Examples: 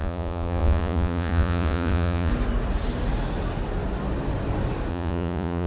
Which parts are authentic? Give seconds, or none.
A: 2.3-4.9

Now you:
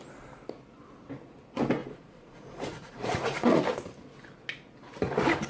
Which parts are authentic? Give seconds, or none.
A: 0.0-1.8; 3.6-5.5

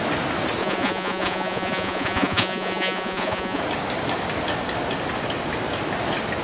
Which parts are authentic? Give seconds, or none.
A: 0.0-0.6; 3.6-6.4